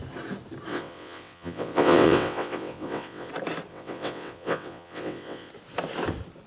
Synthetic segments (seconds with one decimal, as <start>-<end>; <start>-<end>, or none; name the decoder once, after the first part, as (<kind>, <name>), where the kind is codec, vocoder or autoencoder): 0.7-3.3 (vocoder, WaveNeXt); 3.7-5.5